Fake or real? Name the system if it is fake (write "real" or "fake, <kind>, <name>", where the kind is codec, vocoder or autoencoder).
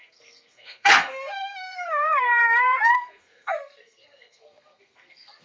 fake, codec, SNAC